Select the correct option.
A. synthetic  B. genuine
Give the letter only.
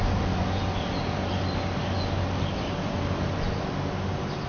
B